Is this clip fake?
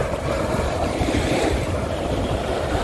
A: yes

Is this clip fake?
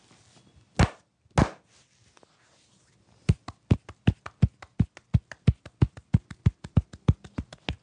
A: no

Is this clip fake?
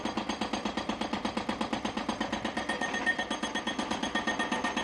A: no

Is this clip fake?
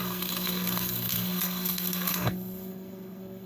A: yes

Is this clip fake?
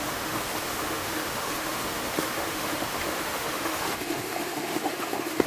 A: yes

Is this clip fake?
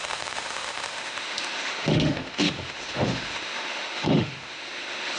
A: yes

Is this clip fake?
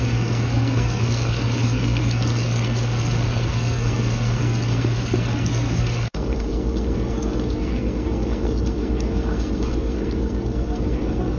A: yes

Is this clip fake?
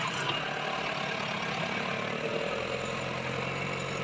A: no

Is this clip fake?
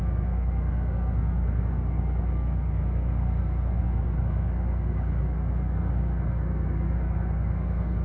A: yes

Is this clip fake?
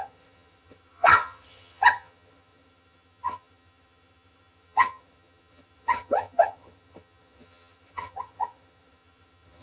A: yes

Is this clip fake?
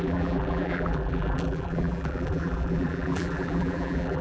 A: yes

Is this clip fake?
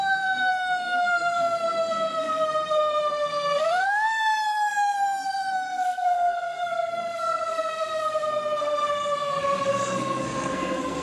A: yes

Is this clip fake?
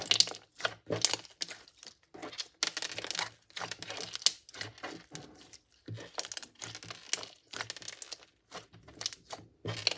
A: no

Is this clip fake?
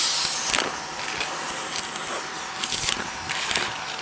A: no